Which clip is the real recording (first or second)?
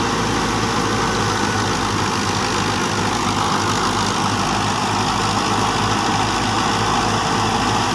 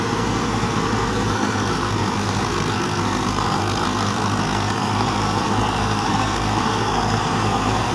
first